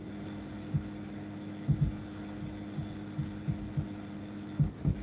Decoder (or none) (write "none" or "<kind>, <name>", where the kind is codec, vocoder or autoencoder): none